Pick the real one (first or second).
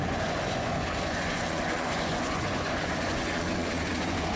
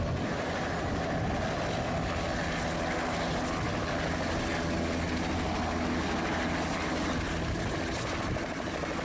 second